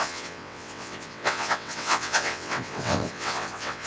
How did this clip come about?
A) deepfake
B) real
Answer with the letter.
A